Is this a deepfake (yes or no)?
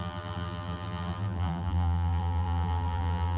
yes